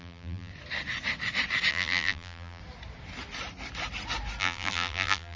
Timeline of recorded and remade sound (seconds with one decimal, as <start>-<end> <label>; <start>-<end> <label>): 0.0-0.5 remade; 0.5-1.7 recorded; 1.7-2.6 remade; 2.6-4.4 recorded; 4.4-5.4 remade